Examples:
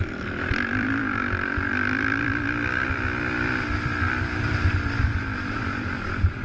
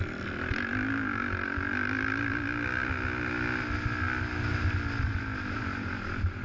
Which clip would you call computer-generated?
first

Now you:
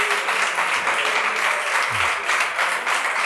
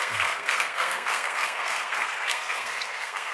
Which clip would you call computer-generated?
second